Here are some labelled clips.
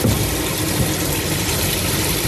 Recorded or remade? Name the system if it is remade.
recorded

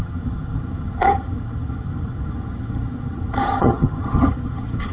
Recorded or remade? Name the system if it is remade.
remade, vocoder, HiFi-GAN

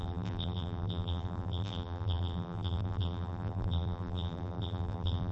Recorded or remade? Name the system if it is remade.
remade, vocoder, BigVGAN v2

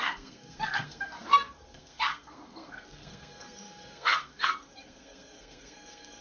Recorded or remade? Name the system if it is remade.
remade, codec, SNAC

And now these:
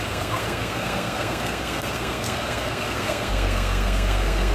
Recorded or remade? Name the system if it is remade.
remade, codec, SNAC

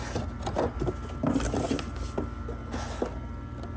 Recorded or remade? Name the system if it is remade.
recorded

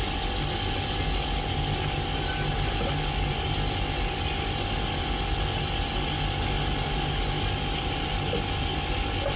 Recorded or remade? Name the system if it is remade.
recorded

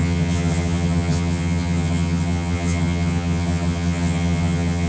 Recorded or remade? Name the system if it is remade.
remade, vocoder, HiFi-GAN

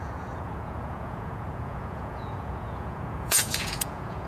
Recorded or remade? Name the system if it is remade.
remade, vocoder, Vocos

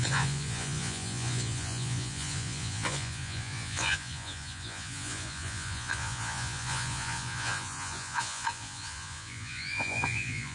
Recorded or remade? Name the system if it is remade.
remade, vocoder, Vocos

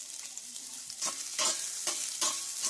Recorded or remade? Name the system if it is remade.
recorded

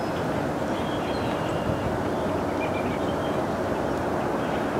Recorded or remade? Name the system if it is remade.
recorded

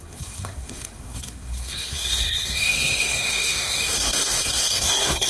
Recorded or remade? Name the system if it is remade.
remade, codec, SNAC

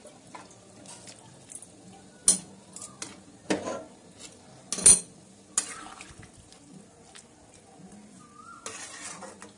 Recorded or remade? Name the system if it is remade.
recorded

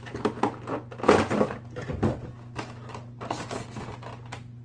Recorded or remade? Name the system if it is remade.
recorded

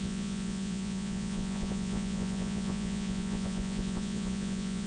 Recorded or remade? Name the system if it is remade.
remade, vocoder, Vocos